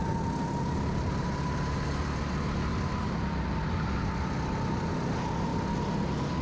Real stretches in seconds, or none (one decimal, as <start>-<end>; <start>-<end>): 0.0-6.4